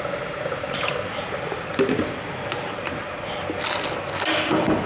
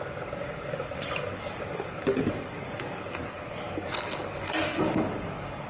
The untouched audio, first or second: first